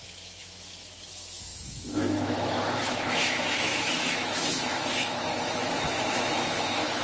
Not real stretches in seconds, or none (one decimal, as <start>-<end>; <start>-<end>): 0.0-7.0